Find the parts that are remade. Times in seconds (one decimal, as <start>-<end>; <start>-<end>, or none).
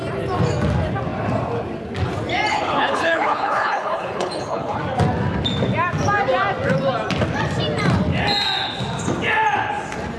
2.5-4.8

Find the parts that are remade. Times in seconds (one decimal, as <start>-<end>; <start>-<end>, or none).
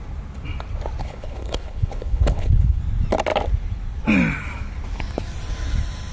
1.0-2.8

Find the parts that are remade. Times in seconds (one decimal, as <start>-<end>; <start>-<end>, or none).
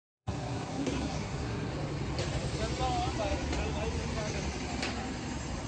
0.0-1.7